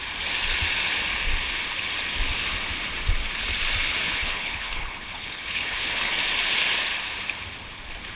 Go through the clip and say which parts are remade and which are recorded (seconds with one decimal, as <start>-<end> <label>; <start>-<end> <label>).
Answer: 0.0-4.0 recorded; 4.0-6.1 remade; 6.1-8.2 recorded